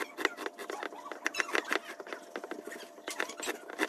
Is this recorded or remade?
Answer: recorded